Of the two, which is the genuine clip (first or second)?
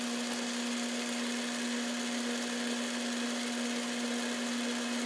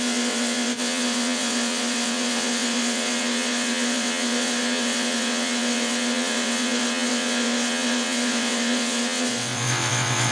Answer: first